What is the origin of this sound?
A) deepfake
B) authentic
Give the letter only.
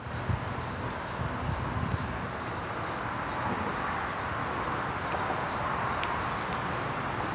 B